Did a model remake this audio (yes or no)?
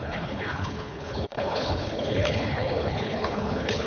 yes